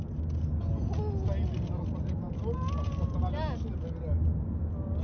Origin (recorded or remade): recorded